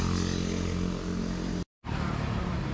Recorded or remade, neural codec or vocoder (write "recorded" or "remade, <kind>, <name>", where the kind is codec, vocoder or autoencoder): recorded